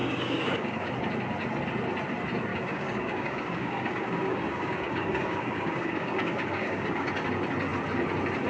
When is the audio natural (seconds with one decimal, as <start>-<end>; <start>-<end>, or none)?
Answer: 0.9-2.5; 7.1-8.5